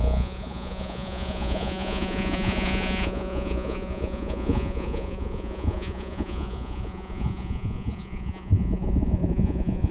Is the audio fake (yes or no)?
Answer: yes